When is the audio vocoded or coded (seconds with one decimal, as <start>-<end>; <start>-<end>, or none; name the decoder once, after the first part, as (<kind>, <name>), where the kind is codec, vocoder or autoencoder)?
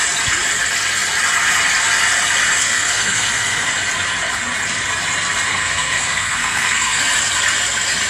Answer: 2.6-3.7 (codec, SNAC); 5.5-7.0